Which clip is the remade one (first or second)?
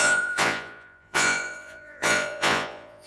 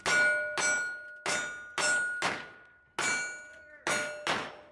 first